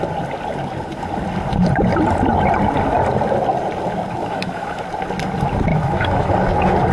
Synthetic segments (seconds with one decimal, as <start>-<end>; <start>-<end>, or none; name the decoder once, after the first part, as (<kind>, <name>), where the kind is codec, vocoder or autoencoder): 4.2-4.8 (autoencoder, DAC-VAE); 5.7-6.3